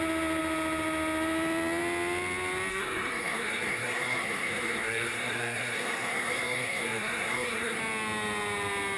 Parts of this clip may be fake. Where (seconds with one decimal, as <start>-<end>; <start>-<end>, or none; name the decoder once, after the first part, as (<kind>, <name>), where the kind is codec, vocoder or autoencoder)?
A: 2.7-7.8 (codec, SNAC)